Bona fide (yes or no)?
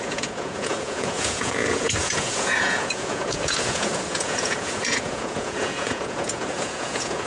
no